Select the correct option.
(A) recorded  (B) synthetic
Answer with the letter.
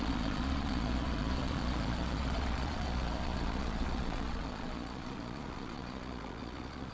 B